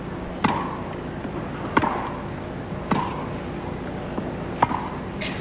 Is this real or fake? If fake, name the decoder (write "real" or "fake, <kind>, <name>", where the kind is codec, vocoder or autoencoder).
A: real